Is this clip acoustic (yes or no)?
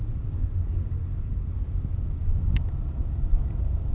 yes